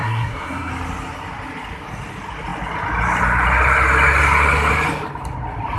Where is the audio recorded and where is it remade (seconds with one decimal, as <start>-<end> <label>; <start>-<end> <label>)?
0.0-0.7 remade; 0.7-5.8 recorded